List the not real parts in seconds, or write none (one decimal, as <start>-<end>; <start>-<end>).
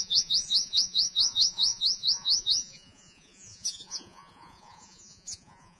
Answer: 0.0-5.8